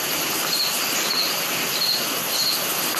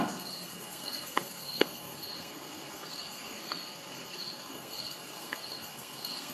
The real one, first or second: first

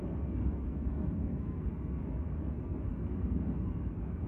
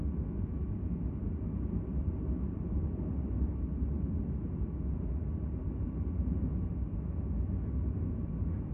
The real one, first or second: second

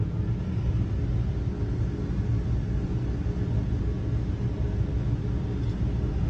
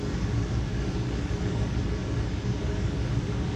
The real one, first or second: first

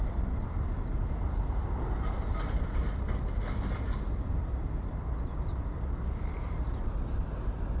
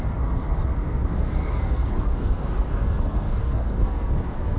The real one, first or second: first